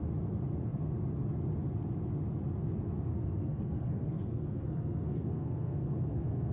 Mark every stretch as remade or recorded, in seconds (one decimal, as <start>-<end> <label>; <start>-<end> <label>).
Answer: 0.0-3.1 recorded; 3.1-6.5 remade

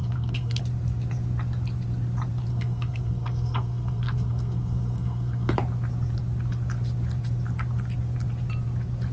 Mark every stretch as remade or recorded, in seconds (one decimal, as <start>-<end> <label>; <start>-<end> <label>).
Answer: 0.0-0.6 remade; 0.6-2.5 recorded; 2.5-5.5 remade; 5.5-9.1 recorded

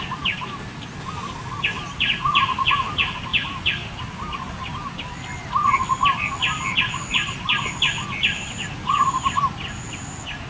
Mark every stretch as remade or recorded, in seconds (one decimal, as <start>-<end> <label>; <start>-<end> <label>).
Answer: 0.0-10.5 recorded

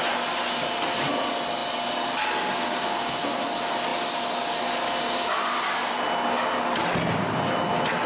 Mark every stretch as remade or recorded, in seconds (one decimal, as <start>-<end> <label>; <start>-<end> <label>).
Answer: 0.0-8.1 recorded

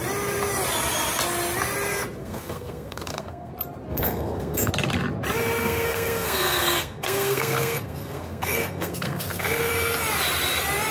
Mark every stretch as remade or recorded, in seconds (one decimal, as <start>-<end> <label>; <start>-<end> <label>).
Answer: 0.0-2.2 recorded; 2.2-3.5 remade; 3.5-3.9 recorded; 3.9-4.7 remade; 4.7-5.6 recorded; 5.6-9.7 remade; 9.7-10.9 recorded

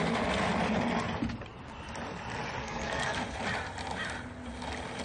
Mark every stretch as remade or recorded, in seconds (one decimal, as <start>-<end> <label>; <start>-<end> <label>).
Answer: 0.0-2.6 recorded; 2.6-3.2 remade; 3.2-5.0 recorded

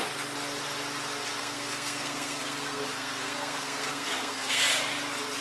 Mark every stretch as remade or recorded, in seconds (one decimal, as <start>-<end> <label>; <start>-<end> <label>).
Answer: 0.0-1.4 recorded; 1.4-4.6 remade; 4.6-5.4 recorded